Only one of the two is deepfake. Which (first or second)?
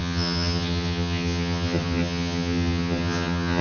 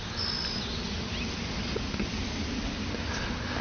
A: first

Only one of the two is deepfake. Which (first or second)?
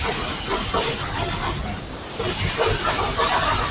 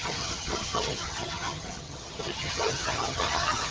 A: second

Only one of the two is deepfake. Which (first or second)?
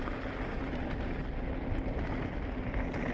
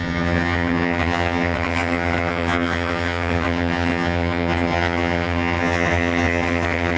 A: second